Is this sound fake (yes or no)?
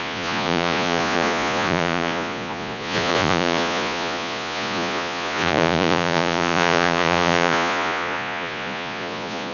yes